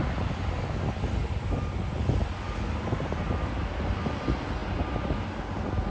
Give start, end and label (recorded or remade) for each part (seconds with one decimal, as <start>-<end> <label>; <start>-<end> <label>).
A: 0.0-5.9 recorded